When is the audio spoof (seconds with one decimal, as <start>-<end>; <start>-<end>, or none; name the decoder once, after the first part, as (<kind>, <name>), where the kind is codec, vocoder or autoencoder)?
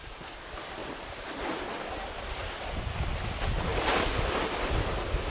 none